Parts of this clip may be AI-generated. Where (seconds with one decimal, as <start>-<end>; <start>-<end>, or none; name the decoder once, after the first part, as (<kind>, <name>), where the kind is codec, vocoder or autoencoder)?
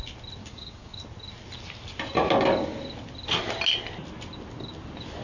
0.4-1.0 (codec, DAC)